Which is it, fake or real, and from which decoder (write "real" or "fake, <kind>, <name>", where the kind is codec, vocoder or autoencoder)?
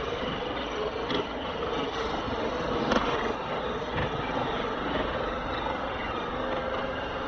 real